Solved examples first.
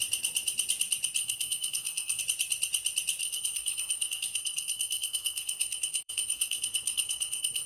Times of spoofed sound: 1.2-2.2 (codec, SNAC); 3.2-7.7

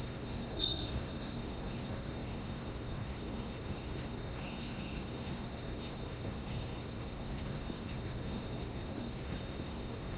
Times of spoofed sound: 0.0-10.2 (codec, SNAC)

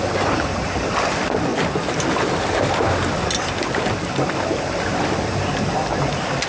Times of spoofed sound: none

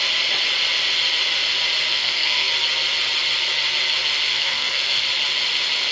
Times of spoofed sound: 1.9-2.5 (codec, SNAC); 4.3-5.0